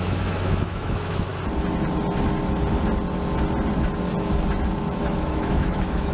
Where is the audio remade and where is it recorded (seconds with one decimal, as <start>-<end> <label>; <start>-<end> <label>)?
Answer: 0.0-1.3 remade; 1.3-5.0 recorded; 5.0-6.1 remade